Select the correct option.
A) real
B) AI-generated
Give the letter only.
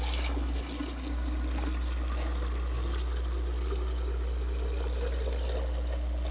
A